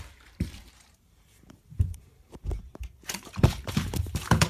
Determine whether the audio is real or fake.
fake